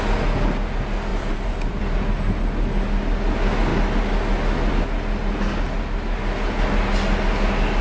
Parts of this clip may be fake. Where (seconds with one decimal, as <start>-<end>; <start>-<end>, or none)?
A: 1.1-1.8